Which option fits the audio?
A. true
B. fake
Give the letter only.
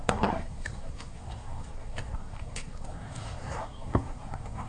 B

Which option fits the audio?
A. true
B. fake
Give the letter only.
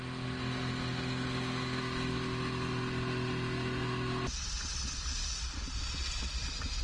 A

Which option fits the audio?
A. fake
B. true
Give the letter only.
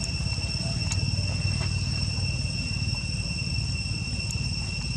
B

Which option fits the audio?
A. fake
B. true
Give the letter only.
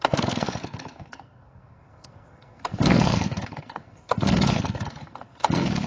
A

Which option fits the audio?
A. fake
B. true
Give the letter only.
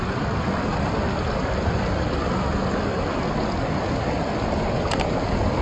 B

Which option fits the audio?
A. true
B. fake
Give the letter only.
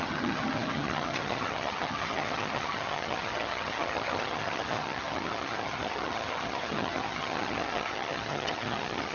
B